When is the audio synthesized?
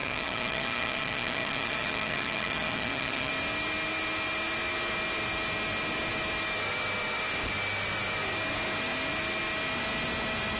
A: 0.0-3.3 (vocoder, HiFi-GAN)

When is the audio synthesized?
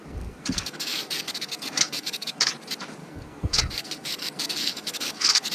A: 0.0-2.5 (codec, SNAC); 3.0-5.5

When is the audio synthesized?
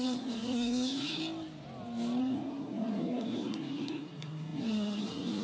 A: 0.0-1.2 (codec, SNAC); 2.2-5.4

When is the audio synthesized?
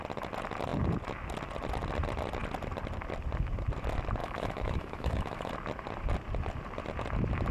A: 4.2-5.5 (autoencoder, DAC-VAE)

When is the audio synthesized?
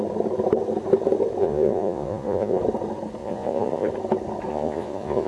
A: 1.4-2.6 (vocoder, Vocos); 3.2-3.9; 4.5-5.3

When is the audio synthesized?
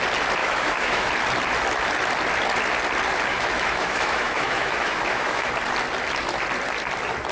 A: 0.4-1.1 (autoencoder, DAC-VAE); 3.3-5.5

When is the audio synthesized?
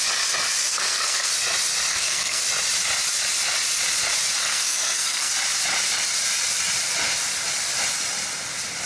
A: 0.6-1.3 (codec, SNAC); 1.9-2.4; 4.4-5.3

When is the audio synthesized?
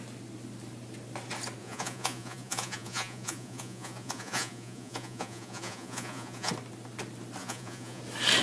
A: 1.6-6.5 (vocoder, Vocos); 7.4-8.0